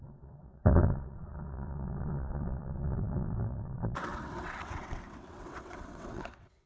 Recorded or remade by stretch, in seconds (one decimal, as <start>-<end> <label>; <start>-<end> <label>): 0.0-6.7 remade